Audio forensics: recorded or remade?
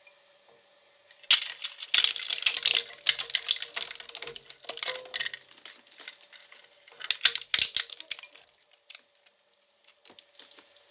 recorded